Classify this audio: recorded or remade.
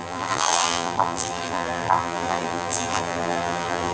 remade